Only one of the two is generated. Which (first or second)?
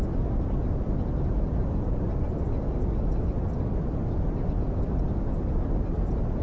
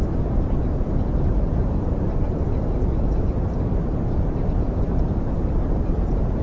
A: second